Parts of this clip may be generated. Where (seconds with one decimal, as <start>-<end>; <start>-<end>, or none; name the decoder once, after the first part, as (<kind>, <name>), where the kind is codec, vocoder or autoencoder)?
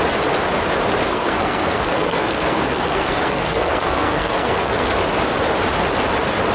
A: 1.1-5.0 (codec, SNAC)